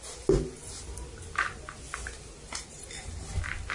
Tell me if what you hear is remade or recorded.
recorded